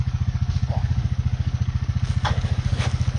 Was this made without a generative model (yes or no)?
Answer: no